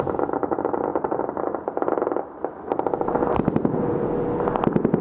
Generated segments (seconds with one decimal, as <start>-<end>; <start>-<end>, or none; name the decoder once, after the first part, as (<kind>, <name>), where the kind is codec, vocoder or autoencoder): none